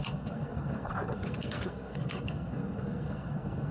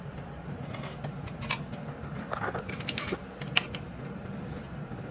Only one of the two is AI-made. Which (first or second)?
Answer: first